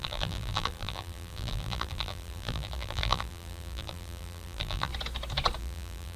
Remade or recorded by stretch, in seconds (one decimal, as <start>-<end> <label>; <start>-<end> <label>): 0.0-4.9 remade; 4.9-5.6 recorded; 5.6-6.2 remade